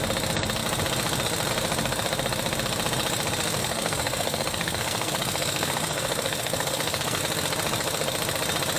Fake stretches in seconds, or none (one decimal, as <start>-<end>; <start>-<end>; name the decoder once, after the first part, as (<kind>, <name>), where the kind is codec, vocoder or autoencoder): 3.6-7.2 (codec, SNAC)